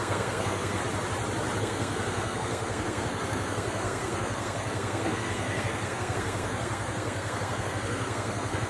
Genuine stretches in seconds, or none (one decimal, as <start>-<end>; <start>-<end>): 0.8-1.6